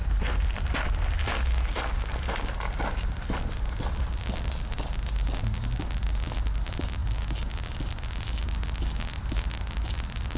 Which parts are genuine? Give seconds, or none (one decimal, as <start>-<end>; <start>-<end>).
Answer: 0.0-10.4